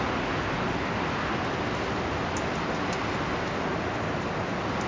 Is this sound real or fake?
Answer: real